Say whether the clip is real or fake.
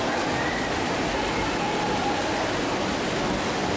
fake